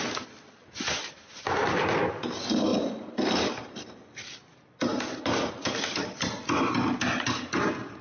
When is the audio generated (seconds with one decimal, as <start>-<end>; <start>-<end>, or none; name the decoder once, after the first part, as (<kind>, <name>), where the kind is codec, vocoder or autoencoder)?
2.7-6.6 (vocoder, BigVGAN v2)